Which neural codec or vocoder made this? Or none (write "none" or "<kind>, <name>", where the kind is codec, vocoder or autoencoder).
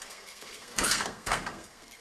codec, SNAC